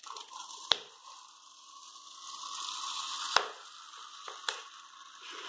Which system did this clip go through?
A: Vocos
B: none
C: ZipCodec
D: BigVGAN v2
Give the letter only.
B